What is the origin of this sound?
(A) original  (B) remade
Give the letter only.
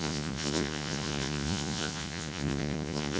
B